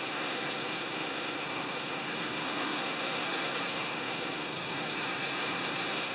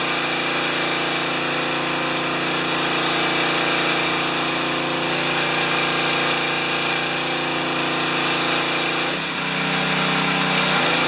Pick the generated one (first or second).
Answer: first